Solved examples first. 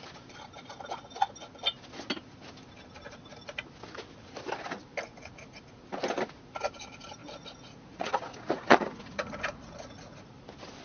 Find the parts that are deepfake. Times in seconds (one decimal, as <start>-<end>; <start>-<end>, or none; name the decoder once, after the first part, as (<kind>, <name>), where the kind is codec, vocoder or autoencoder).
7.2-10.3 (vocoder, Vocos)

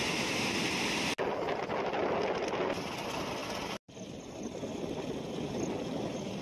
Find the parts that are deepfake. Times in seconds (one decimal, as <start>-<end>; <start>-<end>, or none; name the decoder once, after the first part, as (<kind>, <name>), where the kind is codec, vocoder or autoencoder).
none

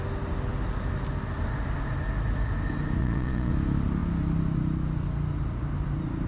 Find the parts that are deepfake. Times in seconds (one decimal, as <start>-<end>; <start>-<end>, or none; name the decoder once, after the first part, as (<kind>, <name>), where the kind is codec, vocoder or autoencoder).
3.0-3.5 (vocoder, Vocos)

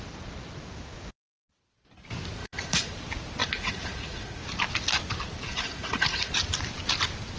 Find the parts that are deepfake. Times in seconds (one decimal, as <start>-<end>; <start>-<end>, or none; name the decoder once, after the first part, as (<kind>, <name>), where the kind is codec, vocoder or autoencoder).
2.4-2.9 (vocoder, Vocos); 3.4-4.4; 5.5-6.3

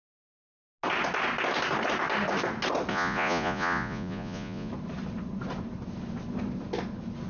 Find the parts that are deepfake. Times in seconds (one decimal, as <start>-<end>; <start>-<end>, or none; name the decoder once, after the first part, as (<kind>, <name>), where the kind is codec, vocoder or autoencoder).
2.9-4.7 (vocoder, Vocos)